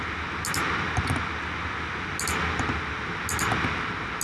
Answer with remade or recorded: recorded